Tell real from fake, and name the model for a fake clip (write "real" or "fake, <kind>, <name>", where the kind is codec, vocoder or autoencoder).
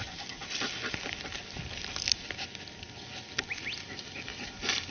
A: real